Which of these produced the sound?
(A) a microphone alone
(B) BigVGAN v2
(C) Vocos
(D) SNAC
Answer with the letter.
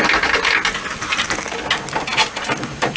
A